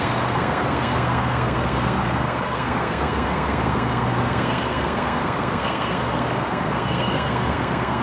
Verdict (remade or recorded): remade